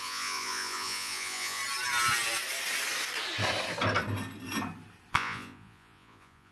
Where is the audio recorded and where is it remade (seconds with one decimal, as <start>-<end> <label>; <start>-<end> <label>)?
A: 0.0-1.6 remade; 1.6-5.1 recorded; 5.1-6.5 remade